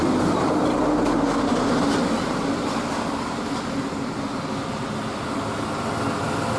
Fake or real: real